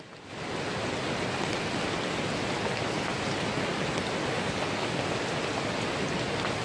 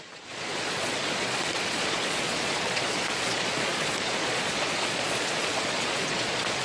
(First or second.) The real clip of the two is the first